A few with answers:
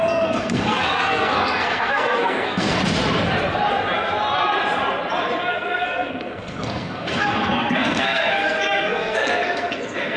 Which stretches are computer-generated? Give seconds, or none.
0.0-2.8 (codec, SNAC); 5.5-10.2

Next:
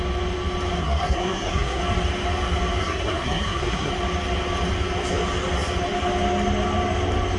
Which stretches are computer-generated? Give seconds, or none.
0.8-1.8 (codec, SNAC); 2.8-3.9

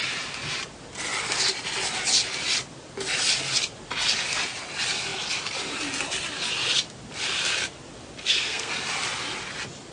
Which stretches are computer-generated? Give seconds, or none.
8.2-8.7 (codec, SNAC)

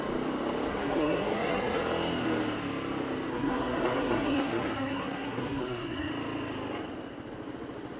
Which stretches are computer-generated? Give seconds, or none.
0.7-1.8 (codec, SNAC); 3.3-6.1

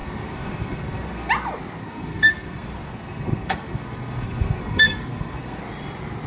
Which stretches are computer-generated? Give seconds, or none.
0.0-1.3 (codec, SNAC); 1.8-5.6